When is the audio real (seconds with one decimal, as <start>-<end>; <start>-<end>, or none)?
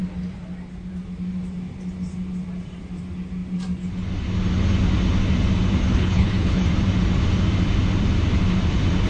0.0-5.9; 6.7-9.1